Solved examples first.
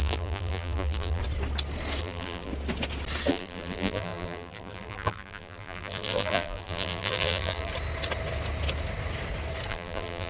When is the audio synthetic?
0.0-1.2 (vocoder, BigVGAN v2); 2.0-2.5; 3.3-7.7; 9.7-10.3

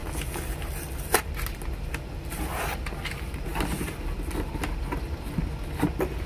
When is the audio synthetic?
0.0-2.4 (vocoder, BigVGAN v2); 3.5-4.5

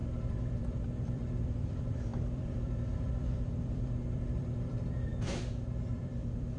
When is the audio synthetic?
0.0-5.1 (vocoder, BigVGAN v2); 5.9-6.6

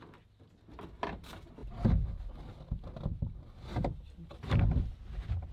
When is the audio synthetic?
none

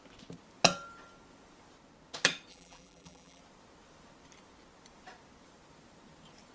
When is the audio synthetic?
2.5-3.4 (vocoder, BigVGAN v2)

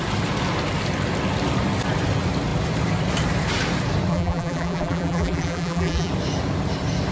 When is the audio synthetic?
4.1-6.1 (vocoder, BigVGAN v2)

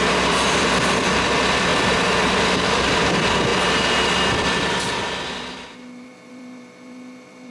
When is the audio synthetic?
0.0-1.7 (vocoder, BigVGAN v2); 2.5-7.5

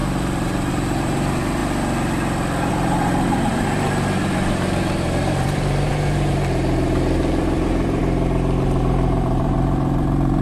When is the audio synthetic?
0.0-1.6 (vocoder, BigVGAN v2); 2.7-8.0; 8.6-10.4